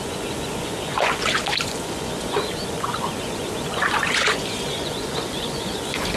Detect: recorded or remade remade